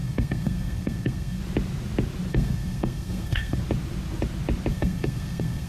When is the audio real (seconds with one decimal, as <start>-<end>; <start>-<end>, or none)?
1.4-2.3; 3.6-4.7